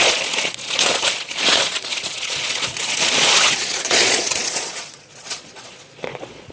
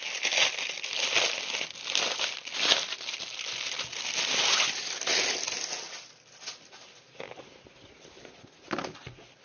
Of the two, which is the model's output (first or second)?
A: first